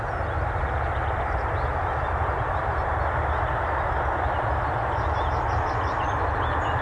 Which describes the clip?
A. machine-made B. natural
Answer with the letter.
B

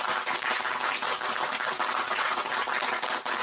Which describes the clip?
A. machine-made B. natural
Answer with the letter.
B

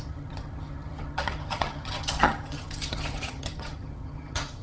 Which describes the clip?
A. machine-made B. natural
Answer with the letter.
A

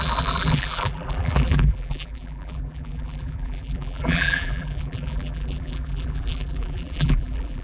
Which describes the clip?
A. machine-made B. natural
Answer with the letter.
A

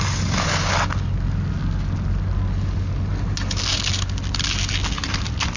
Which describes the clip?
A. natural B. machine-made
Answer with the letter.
A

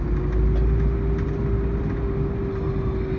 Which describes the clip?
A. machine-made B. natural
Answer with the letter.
B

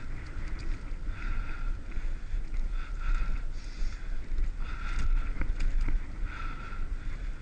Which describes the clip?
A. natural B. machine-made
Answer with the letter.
A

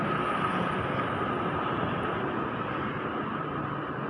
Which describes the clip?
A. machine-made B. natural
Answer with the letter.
B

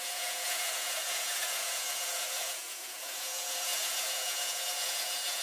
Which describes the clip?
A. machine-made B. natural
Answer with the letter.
A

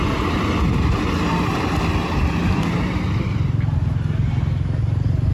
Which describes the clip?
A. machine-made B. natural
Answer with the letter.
B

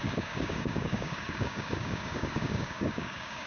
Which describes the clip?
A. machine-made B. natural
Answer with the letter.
A